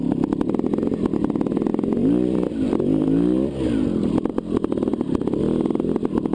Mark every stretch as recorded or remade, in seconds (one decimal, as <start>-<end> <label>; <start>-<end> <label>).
0.0-1.7 recorded; 1.7-4.3 remade; 4.3-4.9 recorded; 4.9-5.4 remade; 5.4-6.3 recorded